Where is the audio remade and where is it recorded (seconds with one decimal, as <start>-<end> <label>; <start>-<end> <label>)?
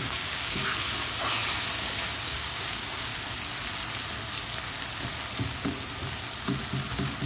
0.0-0.7 remade; 0.7-2.2 recorded; 2.2-3.1 remade; 3.1-7.3 recorded